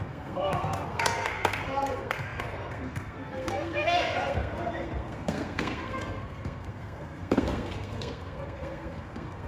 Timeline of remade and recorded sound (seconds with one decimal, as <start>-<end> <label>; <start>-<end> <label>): 0.0-9.5 remade

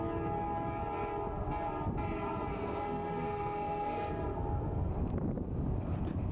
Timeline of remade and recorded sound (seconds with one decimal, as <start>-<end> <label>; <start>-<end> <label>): 0.0-2.5 recorded; 2.5-4.9 remade; 4.9-6.3 recorded

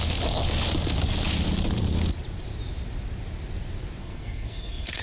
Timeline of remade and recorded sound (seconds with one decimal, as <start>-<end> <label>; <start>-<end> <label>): 0.0-4.0 recorded; 4.0-5.0 remade

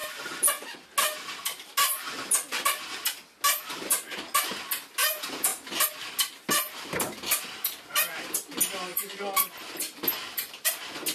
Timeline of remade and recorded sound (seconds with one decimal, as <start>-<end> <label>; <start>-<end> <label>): 0.0-11.1 recorded

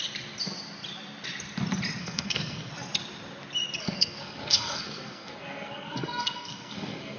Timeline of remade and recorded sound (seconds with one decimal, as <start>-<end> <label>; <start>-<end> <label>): 0.0-2.0 recorded; 2.0-2.7 remade; 2.7-3.8 recorded; 3.8-7.2 remade

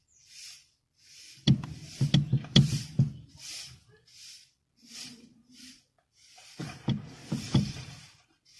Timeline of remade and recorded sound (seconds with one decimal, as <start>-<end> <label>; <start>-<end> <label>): 0.0-8.6 recorded

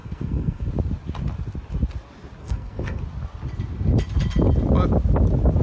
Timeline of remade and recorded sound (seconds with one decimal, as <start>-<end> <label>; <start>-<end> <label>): 0.0-0.7 remade; 0.7-2.4 recorded; 2.4-3.0 remade; 3.0-5.6 recorded